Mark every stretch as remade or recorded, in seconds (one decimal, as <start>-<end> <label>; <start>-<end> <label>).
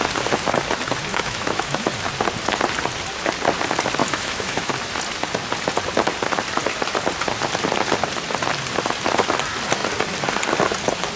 0.0-1.1 recorded; 1.1-1.9 remade; 1.9-4.0 recorded; 4.0-4.7 remade; 4.7-11.2 recorded